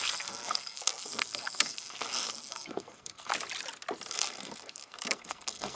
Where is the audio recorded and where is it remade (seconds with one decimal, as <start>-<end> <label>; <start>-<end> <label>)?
0.0-3.3 remade; 3.3-4.1 recorded; 4.1-5.8 remade